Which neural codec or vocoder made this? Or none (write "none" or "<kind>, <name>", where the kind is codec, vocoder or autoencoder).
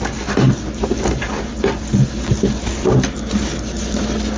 none